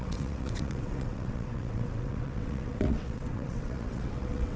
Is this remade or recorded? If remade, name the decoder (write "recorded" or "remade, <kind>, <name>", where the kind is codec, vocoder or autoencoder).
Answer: remade, vocoder, WaveNeXt